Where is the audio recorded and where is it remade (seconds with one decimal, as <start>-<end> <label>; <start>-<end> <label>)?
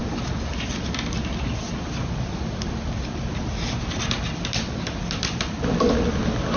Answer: 0.0-6.6 recorded